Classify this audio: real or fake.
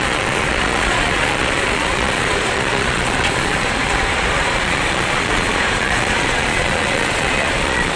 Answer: fake